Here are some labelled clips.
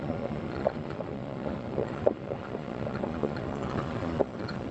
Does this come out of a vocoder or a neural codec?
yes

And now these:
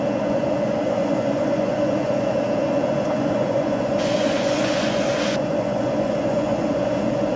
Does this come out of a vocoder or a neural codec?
yes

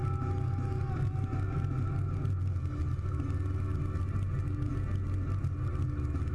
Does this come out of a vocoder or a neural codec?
no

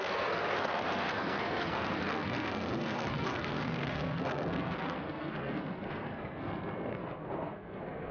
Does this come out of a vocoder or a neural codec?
yes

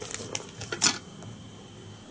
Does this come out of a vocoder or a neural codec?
no